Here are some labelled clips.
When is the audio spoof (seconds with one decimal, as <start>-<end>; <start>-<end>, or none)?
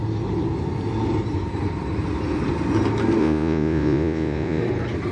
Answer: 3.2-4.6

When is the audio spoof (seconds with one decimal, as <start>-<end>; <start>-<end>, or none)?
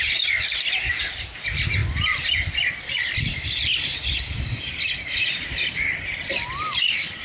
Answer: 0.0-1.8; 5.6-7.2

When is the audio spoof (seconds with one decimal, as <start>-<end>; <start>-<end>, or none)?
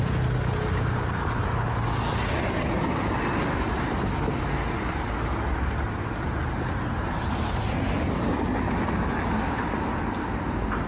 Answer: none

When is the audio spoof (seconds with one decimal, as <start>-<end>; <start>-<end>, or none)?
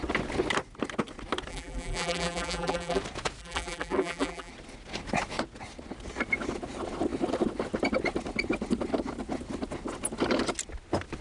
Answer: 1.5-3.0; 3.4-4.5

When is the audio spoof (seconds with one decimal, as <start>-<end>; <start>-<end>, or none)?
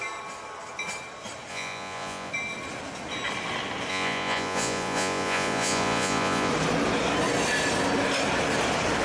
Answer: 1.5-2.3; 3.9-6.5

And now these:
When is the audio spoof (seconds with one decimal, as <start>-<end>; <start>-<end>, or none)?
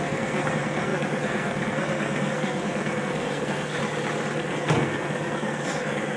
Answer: 0.0-3.8; 4.4-6.2